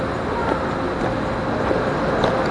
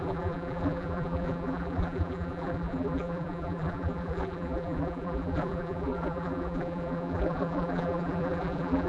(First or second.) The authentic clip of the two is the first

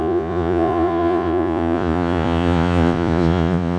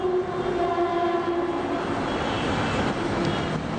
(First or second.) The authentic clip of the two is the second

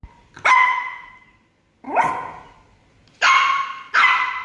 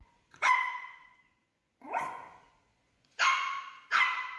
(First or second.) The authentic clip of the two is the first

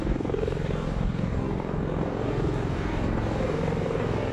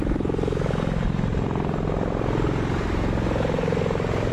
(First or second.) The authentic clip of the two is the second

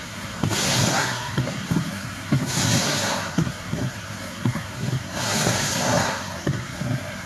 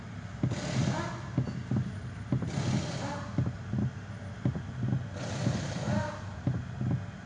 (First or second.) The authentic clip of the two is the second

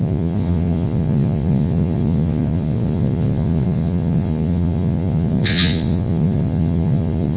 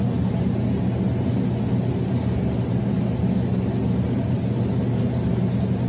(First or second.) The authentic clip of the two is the second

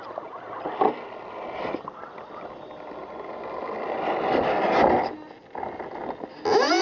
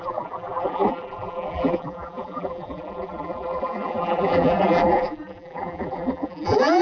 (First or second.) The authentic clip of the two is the first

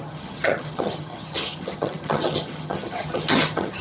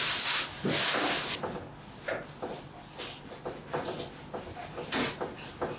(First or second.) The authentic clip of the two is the second